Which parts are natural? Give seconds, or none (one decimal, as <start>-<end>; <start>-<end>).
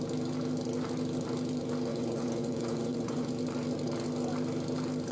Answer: 0.0-1.9; 3.3-5.1